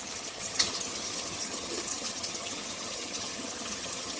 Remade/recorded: remade